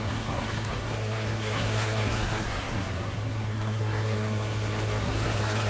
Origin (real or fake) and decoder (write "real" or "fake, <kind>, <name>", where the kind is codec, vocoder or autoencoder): fake, codec, SNAC